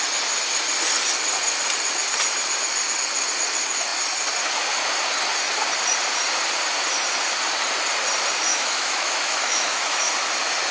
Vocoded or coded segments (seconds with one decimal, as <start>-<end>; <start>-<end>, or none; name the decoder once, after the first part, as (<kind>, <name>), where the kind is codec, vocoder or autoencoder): 8.5-10.1 (autoencoder, DAC-VAE)